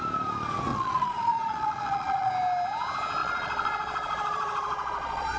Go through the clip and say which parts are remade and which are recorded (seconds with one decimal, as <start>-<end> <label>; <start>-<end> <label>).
0.0-0.7 recorded; 0.7-2.3 remade; 2.3-3.2 recorded; 3.2-5.4 remade

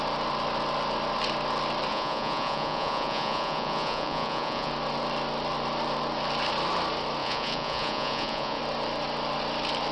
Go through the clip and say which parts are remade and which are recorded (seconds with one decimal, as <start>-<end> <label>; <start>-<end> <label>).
0.0-1.9 recorded; 1.9-4.7 remade; 4.7-7.2 recorded; 7.2-8.6 remade; 8.6-9.9 recorded

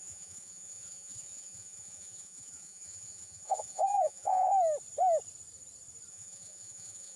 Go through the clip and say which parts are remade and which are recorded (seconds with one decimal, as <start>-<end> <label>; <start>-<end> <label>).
0.0-4.5 remade; 4.5-6.1 recorded; 6.1-7.2 remade

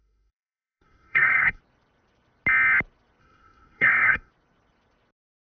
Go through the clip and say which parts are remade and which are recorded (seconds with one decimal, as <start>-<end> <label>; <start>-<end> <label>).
0.0-1.6 remade; 1.6-3.2 recorded; 3.2-4.3 remade; 4.3-5.6 recorded